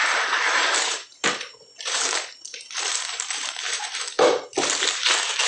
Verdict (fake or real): fake